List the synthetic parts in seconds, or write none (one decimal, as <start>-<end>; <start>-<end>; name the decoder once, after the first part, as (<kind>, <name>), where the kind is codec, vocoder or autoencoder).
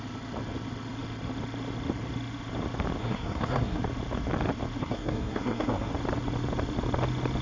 3.0-3.8 (codec, SNAC); 4.8-5.9